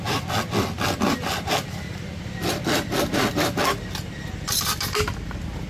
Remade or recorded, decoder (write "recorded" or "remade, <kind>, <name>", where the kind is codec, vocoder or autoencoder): recorded